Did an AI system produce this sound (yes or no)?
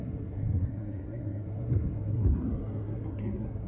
yes